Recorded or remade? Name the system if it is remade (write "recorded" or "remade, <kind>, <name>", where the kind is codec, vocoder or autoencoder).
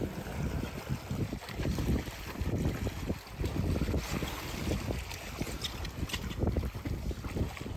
recorded